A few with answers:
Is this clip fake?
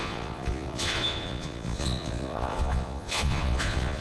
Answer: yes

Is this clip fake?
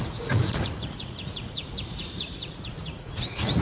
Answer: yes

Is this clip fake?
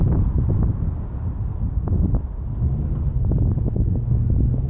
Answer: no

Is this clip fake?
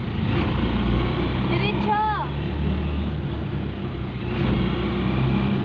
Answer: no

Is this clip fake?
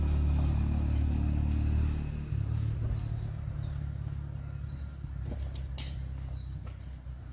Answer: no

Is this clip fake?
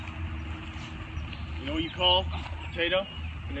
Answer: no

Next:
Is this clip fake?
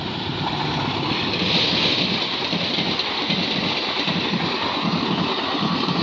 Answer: no